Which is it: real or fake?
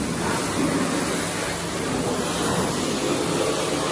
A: real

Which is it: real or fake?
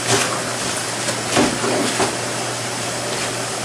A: real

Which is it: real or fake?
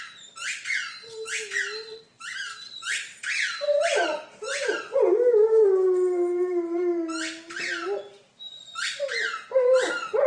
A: real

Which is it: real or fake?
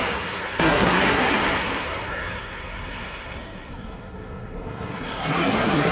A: fake